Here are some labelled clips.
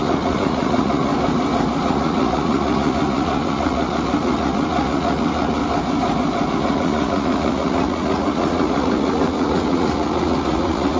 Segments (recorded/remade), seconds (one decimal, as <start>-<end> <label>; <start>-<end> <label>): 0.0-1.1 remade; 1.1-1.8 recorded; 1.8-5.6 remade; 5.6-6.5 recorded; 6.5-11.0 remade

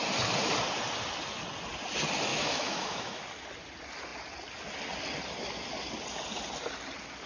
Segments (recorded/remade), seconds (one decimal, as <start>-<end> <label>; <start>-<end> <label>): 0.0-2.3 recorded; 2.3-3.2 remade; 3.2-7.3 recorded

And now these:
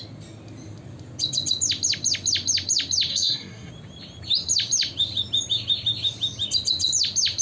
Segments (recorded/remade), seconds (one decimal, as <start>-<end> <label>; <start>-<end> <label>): 0.0-3.1 recorded; 3.1-3.7 remade; 3.7-7.4 recorded

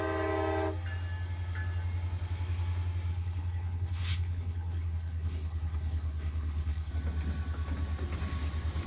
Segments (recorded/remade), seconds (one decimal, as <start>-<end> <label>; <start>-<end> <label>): 0.0-3.1 recorded; 3.1-6.9 remade; 6.9-8.9 recorded